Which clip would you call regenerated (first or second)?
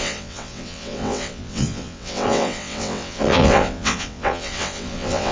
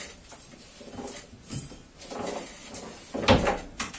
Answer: first